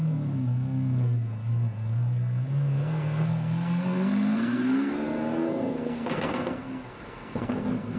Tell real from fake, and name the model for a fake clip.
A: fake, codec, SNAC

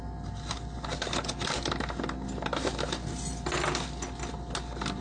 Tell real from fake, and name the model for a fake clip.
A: real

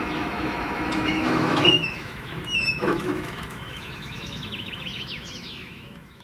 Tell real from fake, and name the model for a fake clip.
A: fake, autoencoder, DAC-VAE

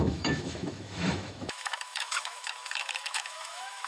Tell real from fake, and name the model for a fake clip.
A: fake, autoencoder, DAC-VAE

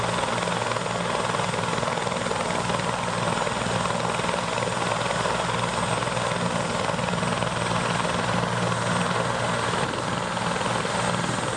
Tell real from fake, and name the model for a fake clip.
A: real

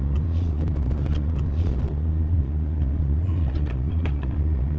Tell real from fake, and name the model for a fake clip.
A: fake, vocoder, Vocos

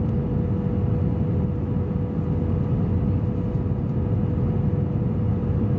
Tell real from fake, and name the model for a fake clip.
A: real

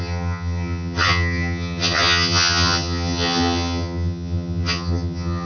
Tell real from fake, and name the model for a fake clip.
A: fake, vocoder, HiFi-GAN